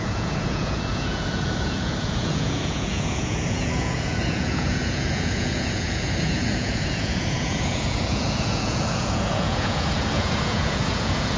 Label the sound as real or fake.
fake